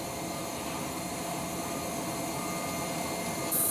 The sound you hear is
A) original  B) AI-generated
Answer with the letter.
A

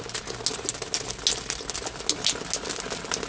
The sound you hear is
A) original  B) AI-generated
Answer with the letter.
A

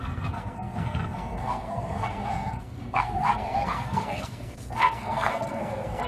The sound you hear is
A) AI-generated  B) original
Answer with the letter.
A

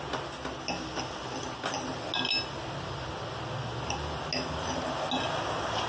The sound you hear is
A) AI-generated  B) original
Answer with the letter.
B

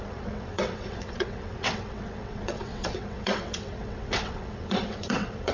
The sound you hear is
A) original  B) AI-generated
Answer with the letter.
B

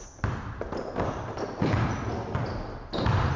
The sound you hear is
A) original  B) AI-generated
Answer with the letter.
A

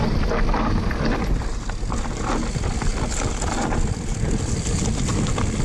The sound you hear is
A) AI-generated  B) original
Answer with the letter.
B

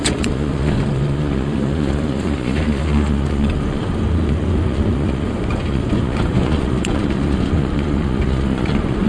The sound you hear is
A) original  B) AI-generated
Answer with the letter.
B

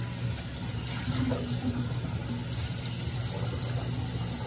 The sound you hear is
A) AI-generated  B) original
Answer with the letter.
B